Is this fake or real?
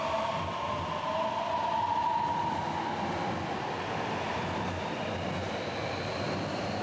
real